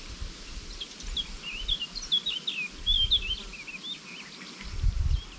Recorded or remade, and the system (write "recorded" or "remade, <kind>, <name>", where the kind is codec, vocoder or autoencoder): recorded